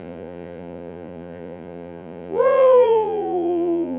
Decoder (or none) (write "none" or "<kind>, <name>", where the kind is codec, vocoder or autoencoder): vocoder, Vocos